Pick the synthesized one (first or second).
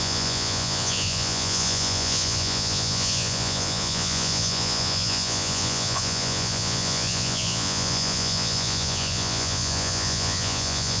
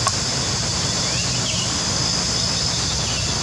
first